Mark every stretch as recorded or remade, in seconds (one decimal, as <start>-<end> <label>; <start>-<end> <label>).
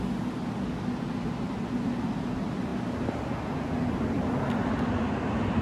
0.0-5.6 recorded